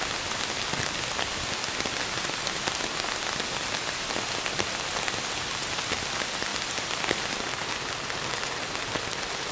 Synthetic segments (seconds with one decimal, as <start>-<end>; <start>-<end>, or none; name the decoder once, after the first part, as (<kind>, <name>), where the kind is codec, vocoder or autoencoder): none